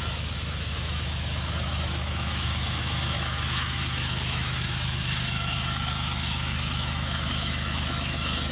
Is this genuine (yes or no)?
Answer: no